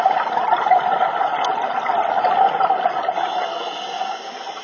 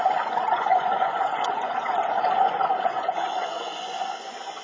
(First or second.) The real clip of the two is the first